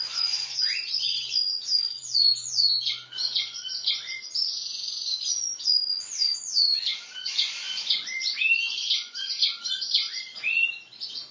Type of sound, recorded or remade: remade